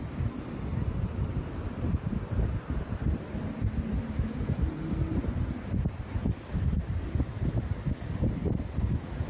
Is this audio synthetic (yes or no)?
no